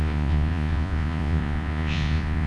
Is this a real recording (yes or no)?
no